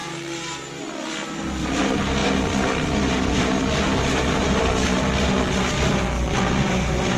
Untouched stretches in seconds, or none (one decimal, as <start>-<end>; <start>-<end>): 0.0-7.2

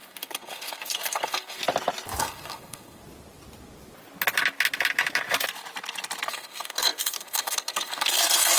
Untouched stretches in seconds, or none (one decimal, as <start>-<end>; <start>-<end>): 1.6-2.2; 3.0-6.3

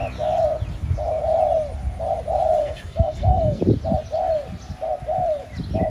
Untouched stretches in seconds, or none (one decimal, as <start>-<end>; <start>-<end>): 0.0-2.6; 3.6-5.9

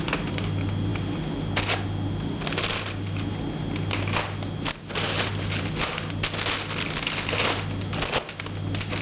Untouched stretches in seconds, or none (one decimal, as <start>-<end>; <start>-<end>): 0.0-9.0

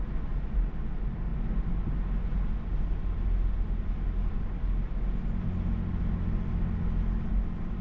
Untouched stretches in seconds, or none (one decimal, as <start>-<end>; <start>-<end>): 0.0-7.8

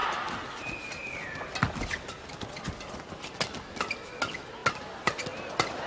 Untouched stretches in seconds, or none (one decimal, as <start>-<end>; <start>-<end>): 0.0-5.9

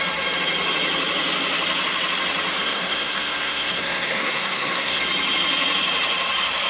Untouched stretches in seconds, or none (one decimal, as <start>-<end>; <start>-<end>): 0.0-2.6; 5.0-6.7